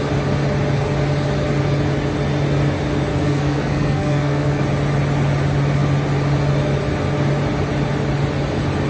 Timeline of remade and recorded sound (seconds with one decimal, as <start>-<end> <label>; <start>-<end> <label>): 0.0-3.1 recorded; 3.1-4.6 remade; 4.6-8.9 recorded